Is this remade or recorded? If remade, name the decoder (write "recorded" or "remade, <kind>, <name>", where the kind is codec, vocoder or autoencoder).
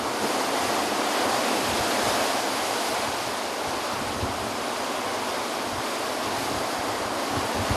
recorded